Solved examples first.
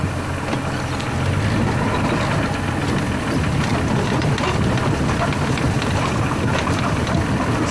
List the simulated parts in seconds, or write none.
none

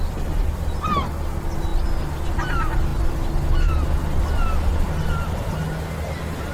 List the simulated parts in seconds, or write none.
none

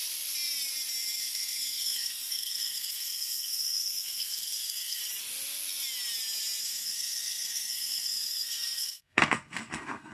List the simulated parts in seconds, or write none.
1.2-5.0 (codec, SNAC); 6.6-10.1

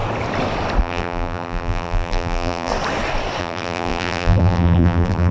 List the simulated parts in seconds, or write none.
0.8-2.7 (vocoder, BigVGAN v2); 3.4-5.3